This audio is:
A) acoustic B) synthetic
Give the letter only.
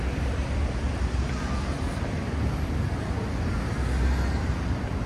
A